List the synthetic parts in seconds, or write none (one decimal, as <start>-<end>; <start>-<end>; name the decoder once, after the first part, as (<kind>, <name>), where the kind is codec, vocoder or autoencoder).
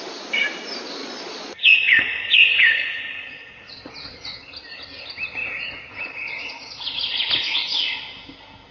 1.0-4.4 (vocoder, Vocos); 5.4-7.3